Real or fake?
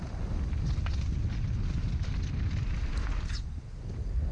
real